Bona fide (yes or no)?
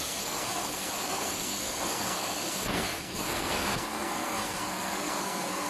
no